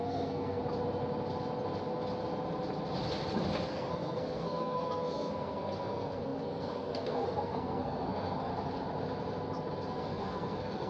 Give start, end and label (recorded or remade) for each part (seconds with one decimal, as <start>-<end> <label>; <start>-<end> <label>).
0.0-0.6 remade; 0.6-3.7 recorded; 3.7-8.5 remade; 8.5-9.9 recorded; 9.9-10.9 remade